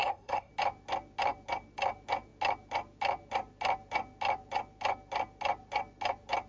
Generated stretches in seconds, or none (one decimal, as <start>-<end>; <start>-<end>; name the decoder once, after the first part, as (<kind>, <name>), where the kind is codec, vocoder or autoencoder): 0.0-0.5 (codec, SNAC)